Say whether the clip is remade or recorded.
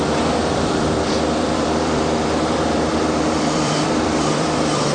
remade